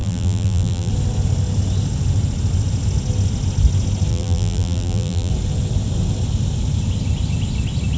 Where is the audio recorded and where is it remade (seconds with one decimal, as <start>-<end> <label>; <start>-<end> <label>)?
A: 0.0-0.9 remade; 0.9-4.1 recorded; 4.1-5.3 remade; 5.3-8.0 recorded